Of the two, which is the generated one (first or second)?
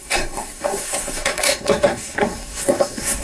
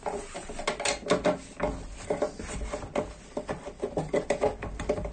first